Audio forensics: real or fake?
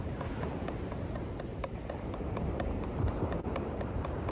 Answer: fake